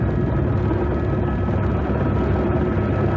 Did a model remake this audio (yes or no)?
no